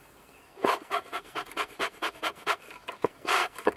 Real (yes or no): no